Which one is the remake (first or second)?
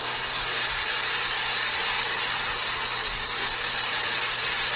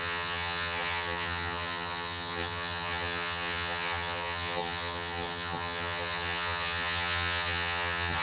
second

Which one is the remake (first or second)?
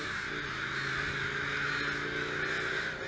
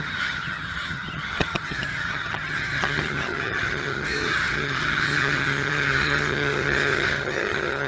second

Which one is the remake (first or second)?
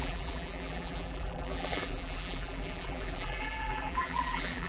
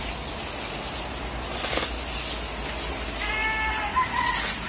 first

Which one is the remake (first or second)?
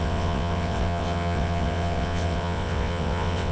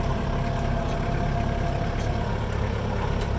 first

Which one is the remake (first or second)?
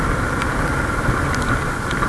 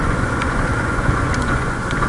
second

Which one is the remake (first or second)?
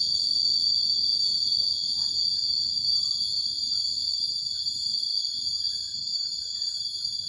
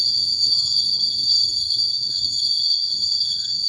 second